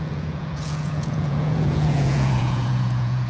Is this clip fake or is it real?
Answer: fake